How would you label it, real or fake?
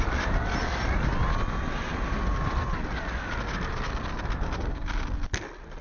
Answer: real